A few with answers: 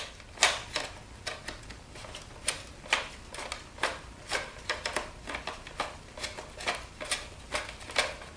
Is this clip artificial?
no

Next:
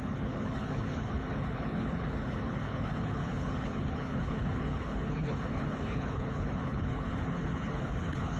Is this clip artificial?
yes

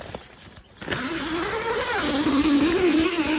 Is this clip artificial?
no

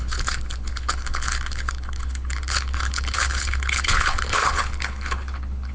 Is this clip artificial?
yes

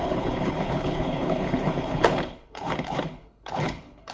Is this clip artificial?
yes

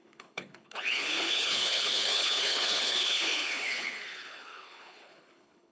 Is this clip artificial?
yes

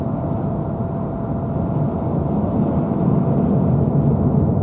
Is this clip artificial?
no